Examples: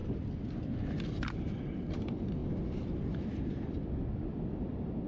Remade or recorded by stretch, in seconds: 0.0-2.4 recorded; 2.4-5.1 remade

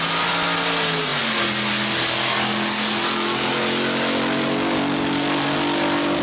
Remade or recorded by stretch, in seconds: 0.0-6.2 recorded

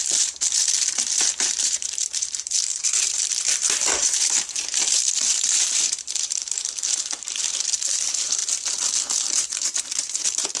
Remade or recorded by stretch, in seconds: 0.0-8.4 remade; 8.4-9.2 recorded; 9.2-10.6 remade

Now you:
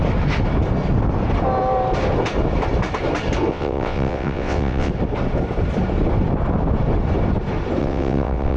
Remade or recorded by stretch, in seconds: 0.0-3.5 recorded; 3.5-4.9 remade; 4.9-7.8 recorded; 7.8-8.6 remade